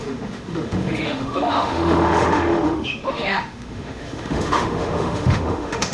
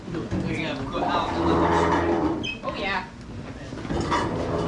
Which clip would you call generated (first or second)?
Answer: first